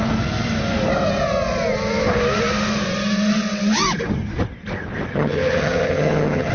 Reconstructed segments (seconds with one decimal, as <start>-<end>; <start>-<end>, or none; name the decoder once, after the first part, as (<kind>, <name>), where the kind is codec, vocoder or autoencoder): 5.1-6.5 (vocoder, HiFi-GAN)